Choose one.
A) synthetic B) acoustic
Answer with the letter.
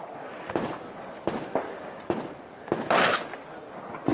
B